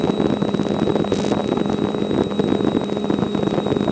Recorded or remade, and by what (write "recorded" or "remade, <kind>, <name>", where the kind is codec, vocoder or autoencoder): recorded